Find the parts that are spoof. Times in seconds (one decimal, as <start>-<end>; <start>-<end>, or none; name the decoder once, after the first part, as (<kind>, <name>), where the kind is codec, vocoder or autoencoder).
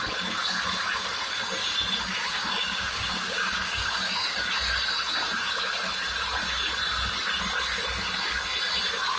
2.1-4.5 (codec, DAC)